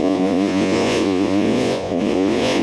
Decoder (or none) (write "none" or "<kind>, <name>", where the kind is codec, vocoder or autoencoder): vocoder, Vocos